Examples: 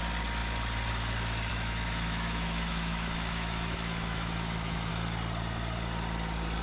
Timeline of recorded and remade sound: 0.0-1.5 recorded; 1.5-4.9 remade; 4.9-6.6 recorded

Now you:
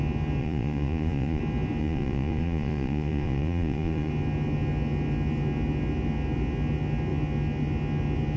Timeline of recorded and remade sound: 0.0-0.4 recorded; 0.4-1.4 remade; 1.4-1.8 recorded; 1.8-4.1 remade; 4.1-8.4 recorded

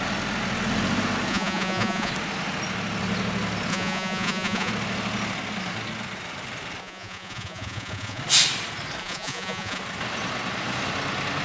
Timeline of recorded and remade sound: 0.0-1.3 recorded; 1.3-2.1 remade; 2.1-3.7 recorded; 3.7-4.7 remade; 4.7-6.8 recorded; 6.8-8.2 remade; 8.2-9.0 recorded; 9.0-9.8 remade; 9.8-11.4 recorded